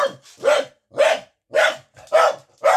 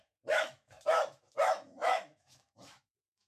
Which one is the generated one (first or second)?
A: second